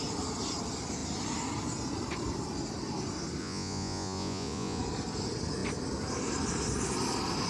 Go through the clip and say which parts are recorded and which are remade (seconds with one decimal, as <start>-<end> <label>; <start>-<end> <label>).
0.0-3.4 recorded; 3.4-4.8 remade; 4.8-7.5 recorded